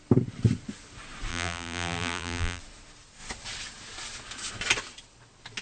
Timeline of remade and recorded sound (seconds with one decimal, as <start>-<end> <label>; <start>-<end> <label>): 0.0-1.3 recorded; 1.3-2.6 remade; 2.6-5.6 recorded